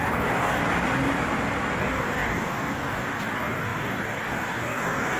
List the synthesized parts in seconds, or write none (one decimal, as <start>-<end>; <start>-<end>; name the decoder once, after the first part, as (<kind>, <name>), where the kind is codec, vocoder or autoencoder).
0.0-0.6 (codec, DAC); 1.8-5.2